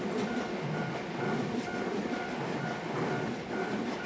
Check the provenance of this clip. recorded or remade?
recorded